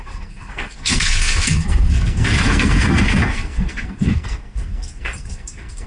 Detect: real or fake fake